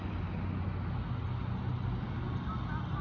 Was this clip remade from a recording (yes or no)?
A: no